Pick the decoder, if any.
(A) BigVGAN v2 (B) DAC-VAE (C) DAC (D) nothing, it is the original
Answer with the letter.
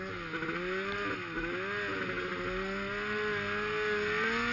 D